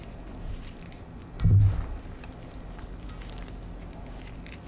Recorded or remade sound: recorded